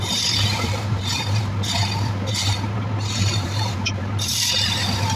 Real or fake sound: fake